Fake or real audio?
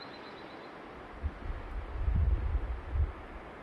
real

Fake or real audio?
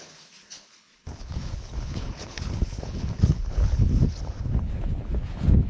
fake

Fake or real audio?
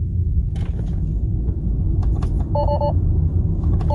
real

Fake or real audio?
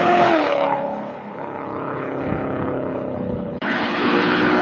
fake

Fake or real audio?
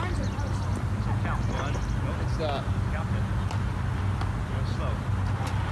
real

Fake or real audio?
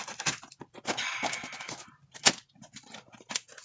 real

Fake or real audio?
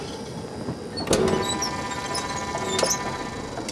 real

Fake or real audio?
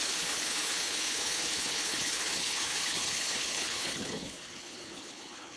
fake